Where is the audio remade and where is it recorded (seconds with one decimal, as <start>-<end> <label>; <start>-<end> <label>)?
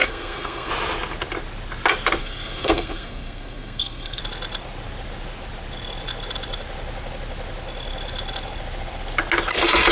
0.0-0.7 remade; 0.7-2.2 recorded; 2.2-4.2 remade; 4.2-9.9 recorded